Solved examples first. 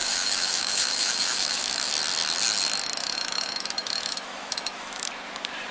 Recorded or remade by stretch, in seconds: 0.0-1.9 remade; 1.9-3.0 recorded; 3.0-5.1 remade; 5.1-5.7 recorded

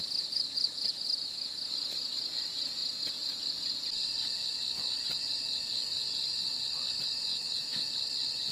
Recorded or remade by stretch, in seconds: 0.0-7.3 recorded; 7.3-7.9 remade; 7.9-8.5 recorded

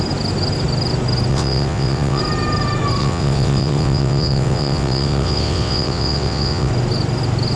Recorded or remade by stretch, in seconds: 0.0-1.3 recorded; 1.3-2.2 remade; 2.2-3.0 recorded; 3.0-6.7 remade; 6.7-7.6 recorded

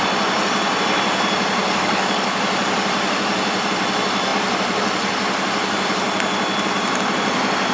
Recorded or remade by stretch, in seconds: 0.0-1.6 recorded; 1.6-2.4 remade; 2.4-7.7 recorded

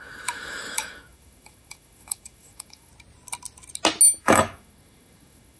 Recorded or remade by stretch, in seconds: 0.0-2.9 remade; 2.9-4.2 recorded; 4.2-5.6 remade

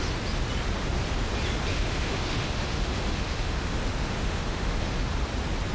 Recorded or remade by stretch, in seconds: 0.0-1.7 recorded; 1.7-5.1 remade; 5.1-5.7 recorded

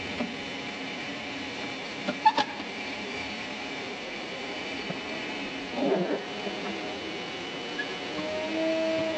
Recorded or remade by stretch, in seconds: 0.0-0.8 recorded; 0.8-5.6 remade; 5.6-9.2 recorded